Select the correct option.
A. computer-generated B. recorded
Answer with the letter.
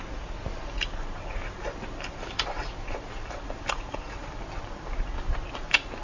B